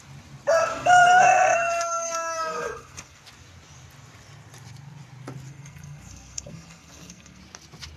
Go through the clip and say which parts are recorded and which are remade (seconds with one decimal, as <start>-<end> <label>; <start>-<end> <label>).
0.0-0.7 recorded; 0.7-3.2 remade; 3.2-5.5 recorded; 5.5-7.4 remade; 7.4-8.0 recorded